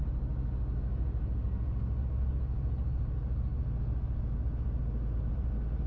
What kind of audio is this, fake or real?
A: real